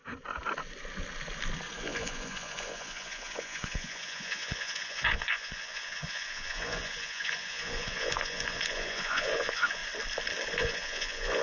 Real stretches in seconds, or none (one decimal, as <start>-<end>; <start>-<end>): 0.0-1.8; 9.8-10.5